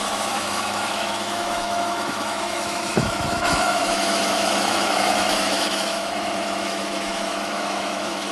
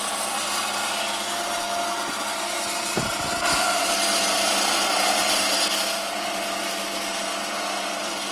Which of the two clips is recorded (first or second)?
second